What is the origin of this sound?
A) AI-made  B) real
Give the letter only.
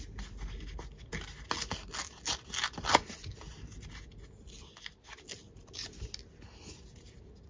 B